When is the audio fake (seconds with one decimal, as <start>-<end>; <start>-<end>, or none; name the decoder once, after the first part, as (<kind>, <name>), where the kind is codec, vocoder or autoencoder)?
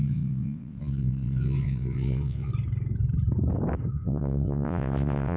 0.0-2.5 (vocoder, WaveNeXt); 3.9-5.4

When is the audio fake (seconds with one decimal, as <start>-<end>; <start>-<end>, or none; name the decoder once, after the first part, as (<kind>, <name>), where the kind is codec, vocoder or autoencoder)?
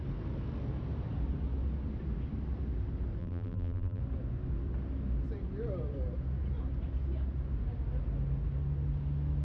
3.2-4.0 (vocoder, BigVGAN v2)